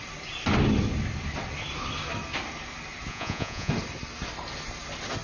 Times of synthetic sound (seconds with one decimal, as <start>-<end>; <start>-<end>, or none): 3.1-3.7